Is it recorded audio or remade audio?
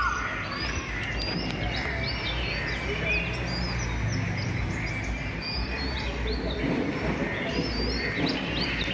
recorded